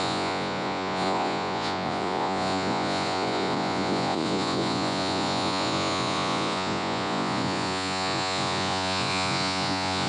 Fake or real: fake